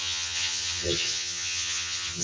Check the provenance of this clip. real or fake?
fake